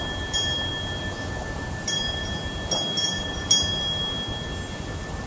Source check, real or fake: real